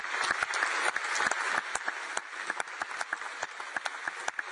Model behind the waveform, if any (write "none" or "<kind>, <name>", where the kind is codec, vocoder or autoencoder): none